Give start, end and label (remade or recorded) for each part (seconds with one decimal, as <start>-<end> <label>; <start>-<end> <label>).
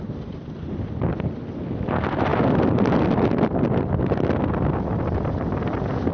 0.0-6.1 recorded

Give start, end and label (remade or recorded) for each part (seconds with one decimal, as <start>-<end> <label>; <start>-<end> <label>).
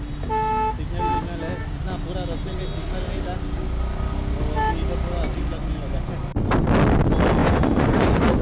0.0-5.6 recorded; 5.6-6.1 remade; 6.1-7.4 recorded; 7.4-8.4 remade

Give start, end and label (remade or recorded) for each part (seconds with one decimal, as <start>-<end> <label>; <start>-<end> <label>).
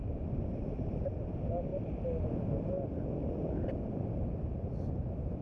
0.0-5.4 recorded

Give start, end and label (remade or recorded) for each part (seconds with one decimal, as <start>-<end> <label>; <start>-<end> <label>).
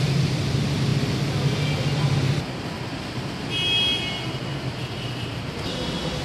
0.0-6.2 recorded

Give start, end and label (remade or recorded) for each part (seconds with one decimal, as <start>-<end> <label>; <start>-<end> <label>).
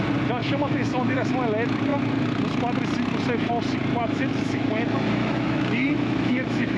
0.0-0.4 recorded; 0.4-1.3 remade; 1.3-4.0 recorded; 4.0-6.8 remade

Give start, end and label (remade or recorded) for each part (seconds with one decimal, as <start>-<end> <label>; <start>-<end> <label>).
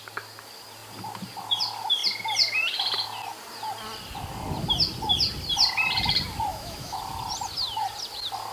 0.0-6.5 recorded; 6.5-7.0 remade; 7.0-8.5 recorded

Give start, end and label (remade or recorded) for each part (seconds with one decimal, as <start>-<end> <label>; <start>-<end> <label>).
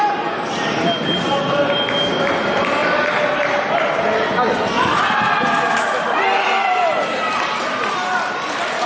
0.0-8.9 recorded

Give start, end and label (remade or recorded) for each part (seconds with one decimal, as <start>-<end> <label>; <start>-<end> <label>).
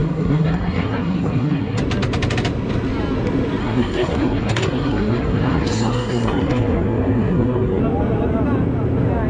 0.0-1.8 remade; 1.8-3.6 recorded; 3.6-7.8 remade; 7.8-9.3 recorded